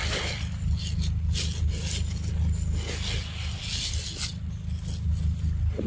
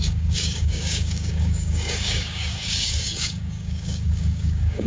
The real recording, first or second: first